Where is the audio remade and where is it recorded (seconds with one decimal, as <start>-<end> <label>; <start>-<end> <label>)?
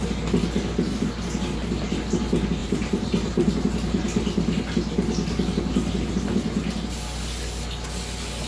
0.0-2.6 recorded; 2.6-3.5 remade; 3.5-8.5 recorded